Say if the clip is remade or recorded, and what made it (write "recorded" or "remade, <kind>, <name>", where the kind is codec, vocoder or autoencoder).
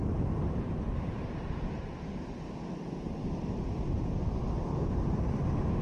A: recorded